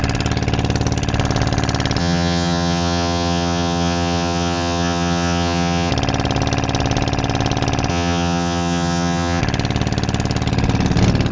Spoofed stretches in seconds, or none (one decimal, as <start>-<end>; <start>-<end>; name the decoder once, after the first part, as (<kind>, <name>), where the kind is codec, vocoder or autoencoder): 2.0-5.9 (vocoder, HiFi-GAN); 7.9-9.4

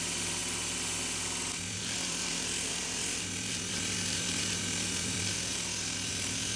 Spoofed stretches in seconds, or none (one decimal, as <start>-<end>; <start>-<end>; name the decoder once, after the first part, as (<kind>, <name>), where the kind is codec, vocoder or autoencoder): 0.0-0.4 (vocoder, BigVGAN v2); 2.7-5.5; 6.1-6.6

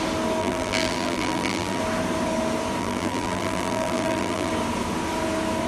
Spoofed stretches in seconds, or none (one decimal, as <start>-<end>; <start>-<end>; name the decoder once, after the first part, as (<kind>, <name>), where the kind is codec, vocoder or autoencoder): 0.4-1.8 (vocoder, BigVGAN v2); 2.8-4.5

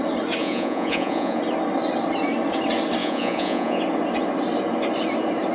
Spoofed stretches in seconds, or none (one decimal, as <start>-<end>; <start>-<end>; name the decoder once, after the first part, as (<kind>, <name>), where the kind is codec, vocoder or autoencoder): 0.4-1.4 (vocoder, Vocos); 3.0-3.8

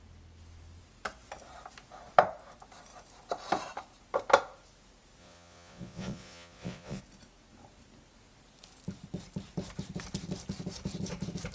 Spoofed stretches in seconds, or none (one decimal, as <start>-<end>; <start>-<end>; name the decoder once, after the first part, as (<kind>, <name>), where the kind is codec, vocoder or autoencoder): 5.2-7.0 (vocoder, Vocos)

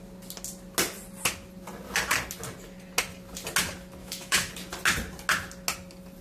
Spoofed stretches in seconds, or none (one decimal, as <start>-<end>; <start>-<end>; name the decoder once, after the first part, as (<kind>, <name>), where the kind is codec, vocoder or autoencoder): 4.0-4.5 (autoencoder, DAC-VAE)

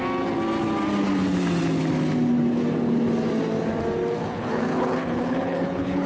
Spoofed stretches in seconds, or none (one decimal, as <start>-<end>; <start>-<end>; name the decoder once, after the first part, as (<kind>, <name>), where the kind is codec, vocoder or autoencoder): 4.2-6.1 (codec, HILCodec)

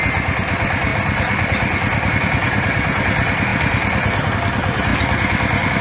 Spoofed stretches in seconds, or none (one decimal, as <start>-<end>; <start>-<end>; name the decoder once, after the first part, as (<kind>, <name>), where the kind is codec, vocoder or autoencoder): none